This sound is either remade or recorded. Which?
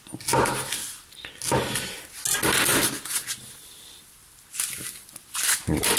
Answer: recorded